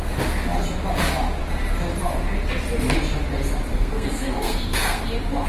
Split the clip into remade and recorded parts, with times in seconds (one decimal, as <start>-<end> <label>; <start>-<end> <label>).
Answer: 0.0-3.7 recorded; 3.7-5.0 remade; 5.0-5.5 recorded